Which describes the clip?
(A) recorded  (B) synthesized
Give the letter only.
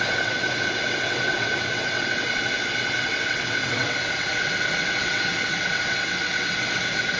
B